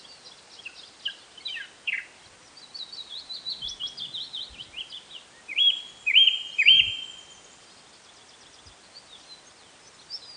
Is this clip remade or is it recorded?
recorded